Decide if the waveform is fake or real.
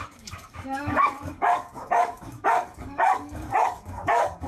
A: fake